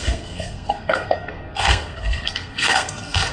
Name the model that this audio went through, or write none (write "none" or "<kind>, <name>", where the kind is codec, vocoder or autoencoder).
codec, SNAC